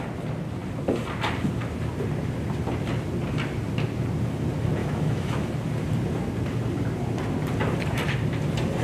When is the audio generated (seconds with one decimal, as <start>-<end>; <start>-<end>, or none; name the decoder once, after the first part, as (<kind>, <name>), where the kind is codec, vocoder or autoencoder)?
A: 4.8-5.5 (autoencoder, DAC-VAE)